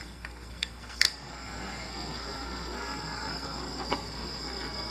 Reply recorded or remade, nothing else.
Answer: remade